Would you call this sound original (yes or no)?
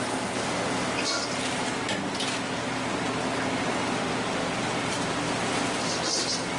yes